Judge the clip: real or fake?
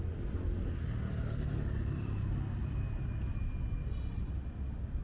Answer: real